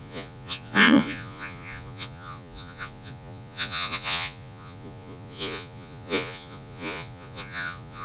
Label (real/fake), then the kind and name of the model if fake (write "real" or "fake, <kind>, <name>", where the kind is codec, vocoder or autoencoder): fake, vocoder, Vocos